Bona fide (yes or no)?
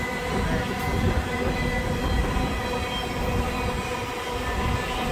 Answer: yes